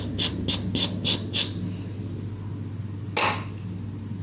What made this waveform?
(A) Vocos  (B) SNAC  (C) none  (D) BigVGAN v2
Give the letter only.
C